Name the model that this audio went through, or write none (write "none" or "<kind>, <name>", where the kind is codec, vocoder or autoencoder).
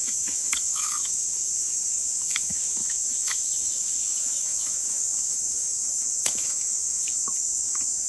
autoencoder, DAC-VAE